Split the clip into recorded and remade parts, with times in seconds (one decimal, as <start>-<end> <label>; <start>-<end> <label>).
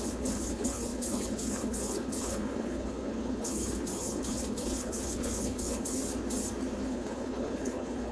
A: 0.0-6.0 remade; 6.0-6.8 recorded; 6.8-8.1 remade